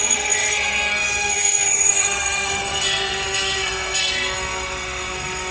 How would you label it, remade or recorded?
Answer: remade